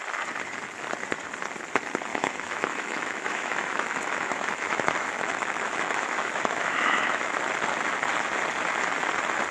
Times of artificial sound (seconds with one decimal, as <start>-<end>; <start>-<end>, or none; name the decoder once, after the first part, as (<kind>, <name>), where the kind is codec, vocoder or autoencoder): 2.1-7.3 (autoencoder, DAC-VAE)